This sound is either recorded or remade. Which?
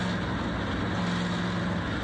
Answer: recorded